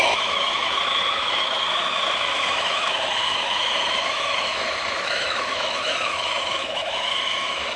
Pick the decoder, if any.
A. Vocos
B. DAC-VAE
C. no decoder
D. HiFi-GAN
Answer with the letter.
B